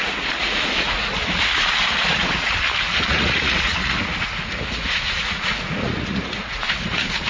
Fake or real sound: fake